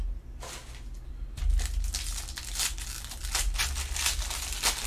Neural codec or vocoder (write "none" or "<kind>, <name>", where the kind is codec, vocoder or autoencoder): none